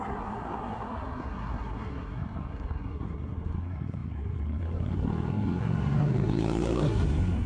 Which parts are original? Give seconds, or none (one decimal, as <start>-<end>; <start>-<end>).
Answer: none